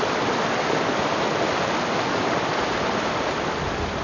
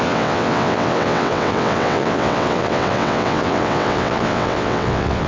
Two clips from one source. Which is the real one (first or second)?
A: first